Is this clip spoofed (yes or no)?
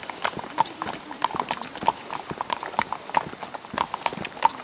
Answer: no